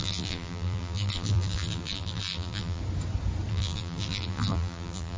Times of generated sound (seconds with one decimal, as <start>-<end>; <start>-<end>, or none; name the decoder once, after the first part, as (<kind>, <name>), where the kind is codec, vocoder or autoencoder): 0.0-2.8 (vocoder, BigVGAN v2); 3.5-5.2